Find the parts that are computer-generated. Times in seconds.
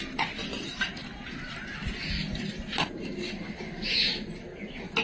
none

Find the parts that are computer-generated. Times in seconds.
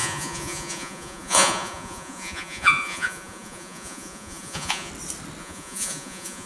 0.0-4.9 (vocoder, Vocos); 5.4-6.5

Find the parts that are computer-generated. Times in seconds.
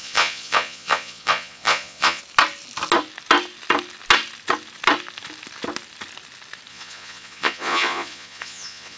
0.0-2.2 (vocoder, Vocos); 6.7-9.0